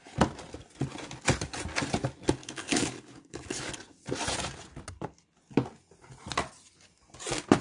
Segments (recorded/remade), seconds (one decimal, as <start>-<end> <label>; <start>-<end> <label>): 0.0-2.4 recorded; 2.4-3.7 remade; 3.7-7.6 recorded